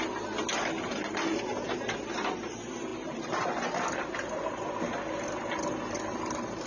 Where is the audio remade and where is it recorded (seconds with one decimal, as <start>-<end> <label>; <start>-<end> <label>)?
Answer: 0.0-6.7 recorded

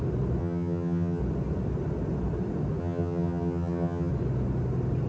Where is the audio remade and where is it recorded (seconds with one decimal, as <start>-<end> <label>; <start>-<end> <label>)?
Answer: 0.0-0.4 recorded; 0.4-1.2 remade; 1.2-2.8 recorded; 2.8-4.1 remade; 4.1-5.1 recorded

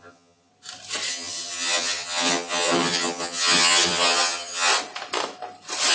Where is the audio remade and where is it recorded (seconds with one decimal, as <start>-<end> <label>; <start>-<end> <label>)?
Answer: 0.0-0.5 remade; 0.5-1.1 recorded; 1.1-4.7 remade; 4.7-5.9 recorded

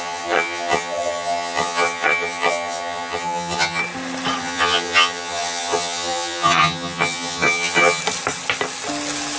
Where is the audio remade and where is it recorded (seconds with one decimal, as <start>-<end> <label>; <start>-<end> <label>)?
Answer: 0.0-3.8 remade; 3.8-4.4 recorded; 4.4-8.0 remade; 8.0-9.4 recorded